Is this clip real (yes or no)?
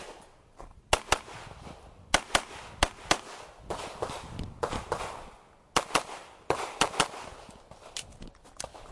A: yes